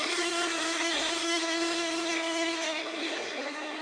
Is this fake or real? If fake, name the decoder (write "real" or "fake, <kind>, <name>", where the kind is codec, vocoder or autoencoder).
fake, codec, SNAC